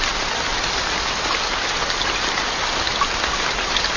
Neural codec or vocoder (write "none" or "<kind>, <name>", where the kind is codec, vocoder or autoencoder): none